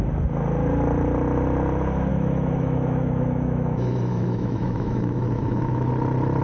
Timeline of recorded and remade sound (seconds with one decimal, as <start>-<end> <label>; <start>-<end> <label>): 0.0-2.1 recorded; 2.1-5.9 remade; 5.9-6.4 recorded